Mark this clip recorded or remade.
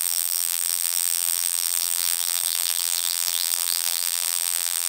remade